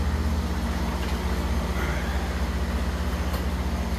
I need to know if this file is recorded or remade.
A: recorded